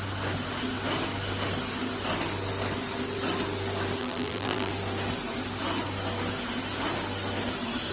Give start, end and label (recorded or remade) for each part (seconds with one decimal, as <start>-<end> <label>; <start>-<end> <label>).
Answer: 0.0-4.0 recorded; 4.0-4.7 remade; 4.7-7.9 recorded